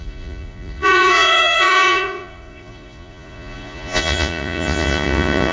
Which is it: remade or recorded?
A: remade